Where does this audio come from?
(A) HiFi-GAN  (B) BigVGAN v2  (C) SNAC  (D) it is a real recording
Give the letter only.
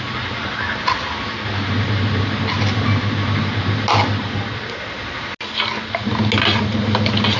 D